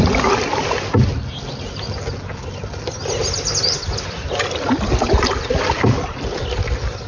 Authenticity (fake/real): real